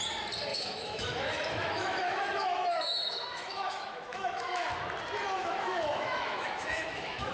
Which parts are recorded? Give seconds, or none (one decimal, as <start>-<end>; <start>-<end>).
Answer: 0.0-0.5; 4.7-5.4